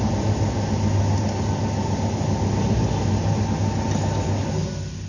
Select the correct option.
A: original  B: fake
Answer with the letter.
A